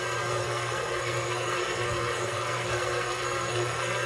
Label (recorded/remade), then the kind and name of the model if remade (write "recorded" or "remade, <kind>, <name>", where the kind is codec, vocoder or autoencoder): remade, codec, SNAC